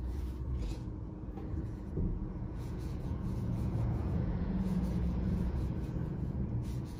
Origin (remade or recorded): remade